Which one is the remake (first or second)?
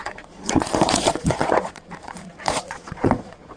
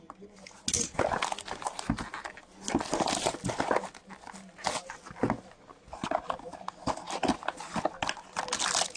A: first